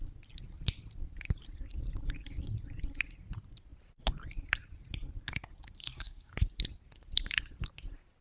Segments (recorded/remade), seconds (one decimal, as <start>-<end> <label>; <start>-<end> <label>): 0.0-5.8 recorded; 5.8-6.3 remade; 6.3-8.2 recorded